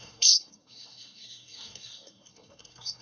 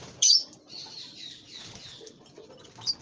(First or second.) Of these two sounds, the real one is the second